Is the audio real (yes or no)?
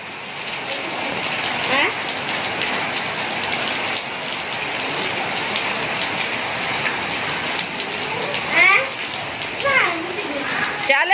yes